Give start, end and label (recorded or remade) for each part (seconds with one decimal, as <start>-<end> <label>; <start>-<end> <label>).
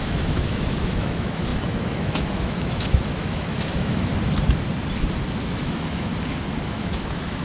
0.0-4.1 remade; 4.1-5.6 recorded; 5.6-6.1 remade; 6.1-6.7 recorded; 6.7-7.4 remade